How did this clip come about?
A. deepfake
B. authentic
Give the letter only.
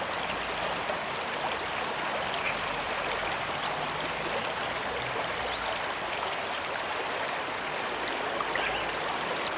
B